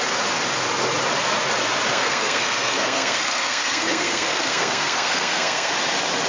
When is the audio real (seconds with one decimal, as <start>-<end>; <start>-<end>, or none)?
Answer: 0.0-1.9; 5.7-6.3